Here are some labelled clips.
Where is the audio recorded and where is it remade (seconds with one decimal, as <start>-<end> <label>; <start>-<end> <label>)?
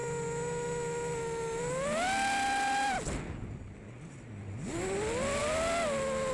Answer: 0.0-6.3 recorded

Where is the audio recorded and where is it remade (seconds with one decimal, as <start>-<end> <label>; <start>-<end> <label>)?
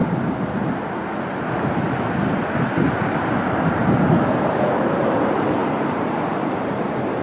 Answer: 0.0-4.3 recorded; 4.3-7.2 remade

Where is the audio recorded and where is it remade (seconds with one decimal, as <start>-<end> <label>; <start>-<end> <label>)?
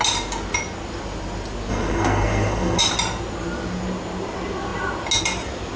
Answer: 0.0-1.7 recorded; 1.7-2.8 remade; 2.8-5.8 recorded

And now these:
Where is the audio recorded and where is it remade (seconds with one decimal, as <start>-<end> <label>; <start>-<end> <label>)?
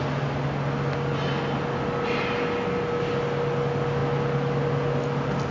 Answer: 0.0-5.5 recorded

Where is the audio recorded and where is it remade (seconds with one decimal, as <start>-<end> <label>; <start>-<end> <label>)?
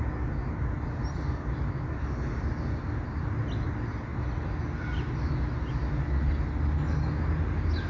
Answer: 0.0-7.9 recorded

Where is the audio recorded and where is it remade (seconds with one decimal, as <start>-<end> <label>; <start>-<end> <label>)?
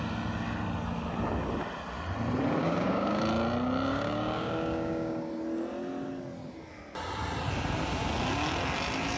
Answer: 0.0-2.6 recorded; 2.6-3.2 remade; 3.2-3.9 recorded; 3.9-5.3 remade; 5.3-9.2 recorded